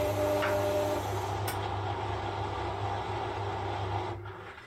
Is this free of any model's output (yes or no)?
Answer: yes